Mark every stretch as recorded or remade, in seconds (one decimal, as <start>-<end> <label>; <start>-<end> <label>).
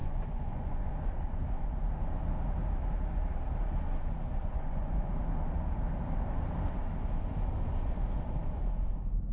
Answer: 0.0-0.9 remade; 0.9-4.4 recorded; 4.4-5.1 remade; 5.1-9.3 recorded